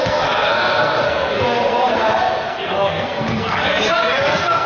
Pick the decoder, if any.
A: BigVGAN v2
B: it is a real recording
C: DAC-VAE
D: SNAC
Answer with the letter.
D